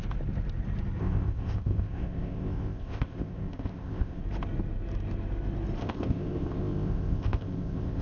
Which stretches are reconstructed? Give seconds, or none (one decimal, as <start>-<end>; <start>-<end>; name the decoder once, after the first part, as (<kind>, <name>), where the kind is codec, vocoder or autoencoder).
1.0-4.2 (codec, ZipCodec); 5.8-8.0